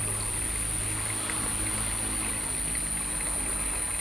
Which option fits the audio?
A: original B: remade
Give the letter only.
A